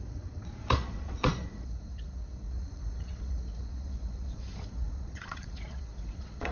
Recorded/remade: remade